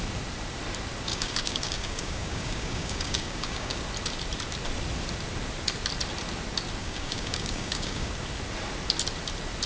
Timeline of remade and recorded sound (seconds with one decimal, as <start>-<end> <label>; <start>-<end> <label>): 0.0-1.1 recorded; 1.1-3.8 remade; 3.8-6.8 recorded; 6.8-8.1 remade; 8.1-9.7 recorded